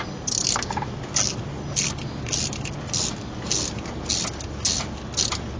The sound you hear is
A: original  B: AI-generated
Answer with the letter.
A